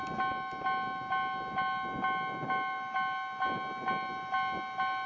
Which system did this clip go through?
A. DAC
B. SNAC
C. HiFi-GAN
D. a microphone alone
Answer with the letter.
D